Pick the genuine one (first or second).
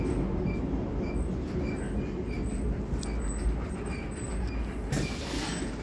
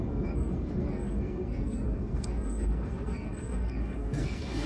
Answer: first